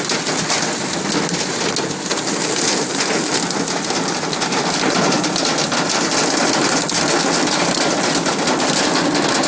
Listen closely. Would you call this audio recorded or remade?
recorded